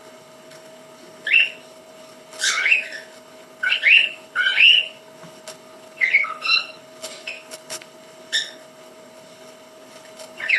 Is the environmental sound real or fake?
fake